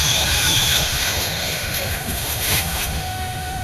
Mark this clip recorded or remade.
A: remade